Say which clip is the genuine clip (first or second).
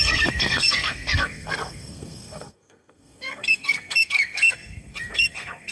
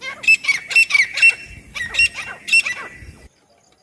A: second